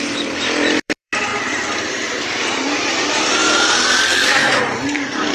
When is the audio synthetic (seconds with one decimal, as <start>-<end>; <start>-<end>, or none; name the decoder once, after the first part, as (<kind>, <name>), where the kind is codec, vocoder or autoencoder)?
0.0-3.4 (vocoder, BigVGAN v2); 4.6-5.3